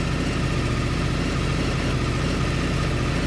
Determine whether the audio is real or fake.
real